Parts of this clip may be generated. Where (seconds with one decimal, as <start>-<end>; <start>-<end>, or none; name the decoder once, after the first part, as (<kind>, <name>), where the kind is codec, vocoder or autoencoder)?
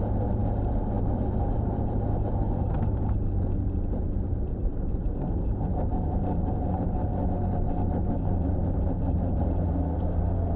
0.0-7.1 (vocoder, BigVGAN v2); 7.7-10.6